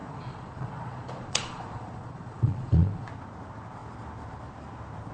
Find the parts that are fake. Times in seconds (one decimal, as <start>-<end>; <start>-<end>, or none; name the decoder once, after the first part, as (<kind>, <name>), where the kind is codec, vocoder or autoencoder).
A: 0.0-3.1 (vocoder, Vocos)